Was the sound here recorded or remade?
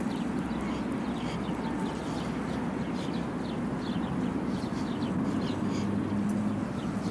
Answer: recorded